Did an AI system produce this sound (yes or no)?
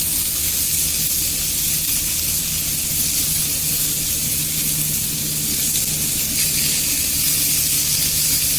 no